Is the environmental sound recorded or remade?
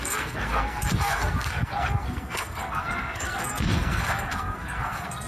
remade